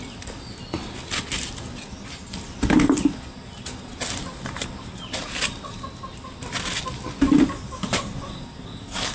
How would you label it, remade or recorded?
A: recorded